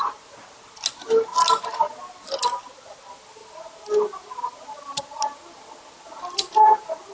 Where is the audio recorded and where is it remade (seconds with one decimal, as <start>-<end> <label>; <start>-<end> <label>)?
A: 0.0-7.1 recorded